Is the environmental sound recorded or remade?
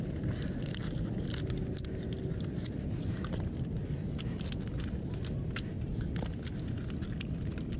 recorded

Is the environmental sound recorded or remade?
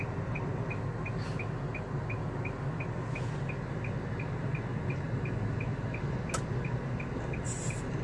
recorded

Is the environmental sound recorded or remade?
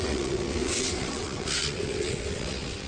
remade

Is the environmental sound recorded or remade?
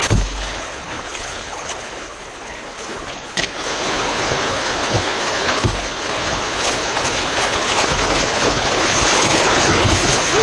remade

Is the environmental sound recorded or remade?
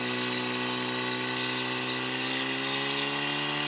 recorded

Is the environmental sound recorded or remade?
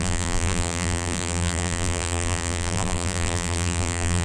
remade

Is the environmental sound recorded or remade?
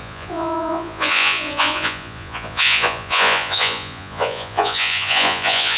remade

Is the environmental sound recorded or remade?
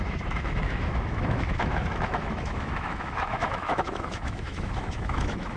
remade